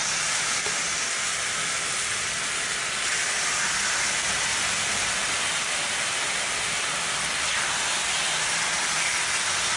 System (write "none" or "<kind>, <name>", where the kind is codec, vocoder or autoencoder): none